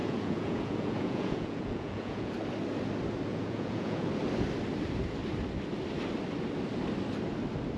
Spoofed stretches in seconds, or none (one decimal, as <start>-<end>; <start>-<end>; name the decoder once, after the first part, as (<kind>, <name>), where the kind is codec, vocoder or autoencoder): 0.0-2.3 (vocoder, Vocos); 3.3-4.1